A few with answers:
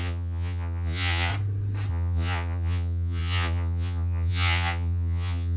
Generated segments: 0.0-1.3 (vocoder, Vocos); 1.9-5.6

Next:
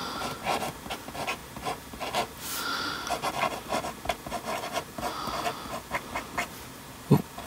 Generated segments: none

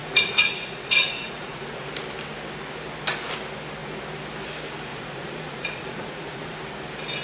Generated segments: 0.0-1.9 (vocoder, Vocos); 4.9-6.6

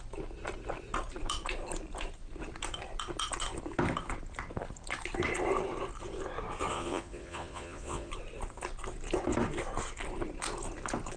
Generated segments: 6.7-8.1 (vocoder, Vocos)

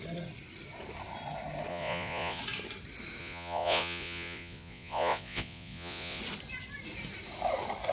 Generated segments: 1.7-2.4 (vocoder, Vocos); 3.2-6.2

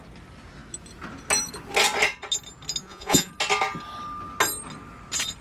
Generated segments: 2.8-3.3 (vocoder, Vocos)

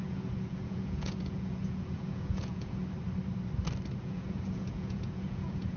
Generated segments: 0.0-2.8 (vocoder, Vocos); 4.0-5.8